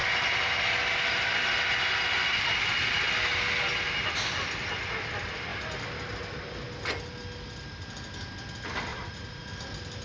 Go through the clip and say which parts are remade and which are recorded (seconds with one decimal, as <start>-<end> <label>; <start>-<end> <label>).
0.0-8.9 recorded; 8.9-9.5 remade; 9.5-10.0 recorded